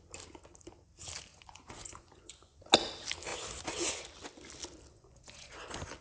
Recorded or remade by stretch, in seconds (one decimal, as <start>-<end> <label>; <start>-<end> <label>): 0.0-1.3 recorded; 1.3-2.6 remade; 2.6-4.9 recorded; 4.9-5.5 remade; 5.5-6.0 recorded